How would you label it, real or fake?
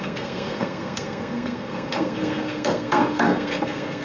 fake